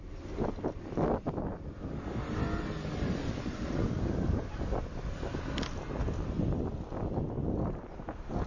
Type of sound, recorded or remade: recorded